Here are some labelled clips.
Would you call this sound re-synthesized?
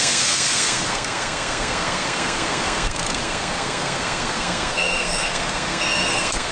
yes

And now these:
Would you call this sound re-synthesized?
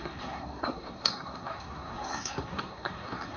yes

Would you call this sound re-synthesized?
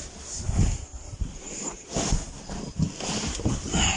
no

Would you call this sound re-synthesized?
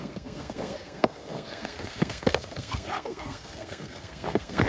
yes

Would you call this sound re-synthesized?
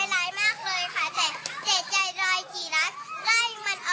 no